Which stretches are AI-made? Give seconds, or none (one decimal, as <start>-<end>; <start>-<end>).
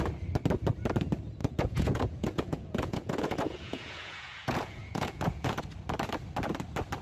1.4-5.6